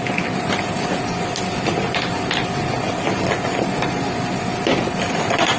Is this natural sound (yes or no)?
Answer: yes